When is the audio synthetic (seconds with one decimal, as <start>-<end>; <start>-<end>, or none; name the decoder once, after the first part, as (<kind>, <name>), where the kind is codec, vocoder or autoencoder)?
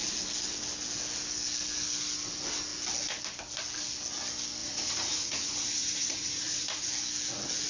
4.6-6.9 (vocoder, Vocos)